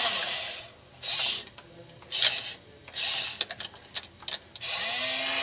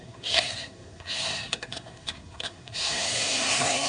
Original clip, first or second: first